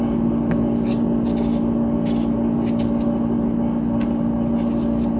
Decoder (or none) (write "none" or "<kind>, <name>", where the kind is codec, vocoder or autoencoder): none